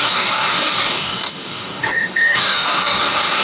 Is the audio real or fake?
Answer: fake